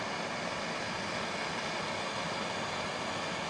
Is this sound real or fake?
real